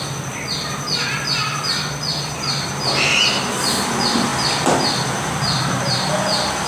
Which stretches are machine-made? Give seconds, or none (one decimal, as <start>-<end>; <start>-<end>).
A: none